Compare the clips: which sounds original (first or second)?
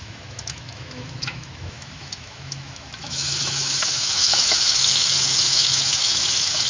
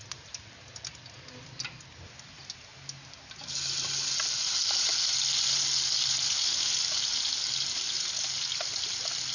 second